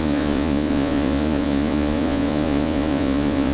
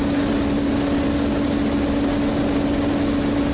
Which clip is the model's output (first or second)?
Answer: first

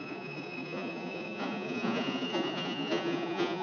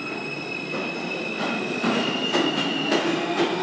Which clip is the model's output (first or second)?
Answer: first